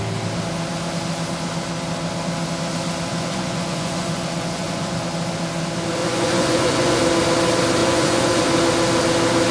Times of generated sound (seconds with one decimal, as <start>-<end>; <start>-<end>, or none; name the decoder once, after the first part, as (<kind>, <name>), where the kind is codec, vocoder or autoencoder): 3.1-5.0 (vocoder, Vocos); 6.0-7.0; 7.8-8.4